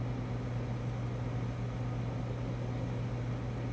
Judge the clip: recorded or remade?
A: recorded